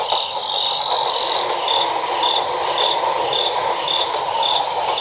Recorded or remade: recorded